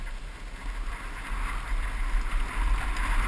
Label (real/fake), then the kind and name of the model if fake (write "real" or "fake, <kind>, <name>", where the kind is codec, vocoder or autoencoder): real